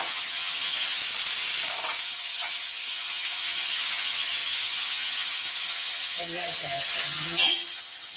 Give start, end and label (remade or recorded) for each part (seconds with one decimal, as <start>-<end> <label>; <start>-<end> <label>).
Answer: 0.0-1.0 remade; 1.0-2.0 recorded; 2.0-8.2 remade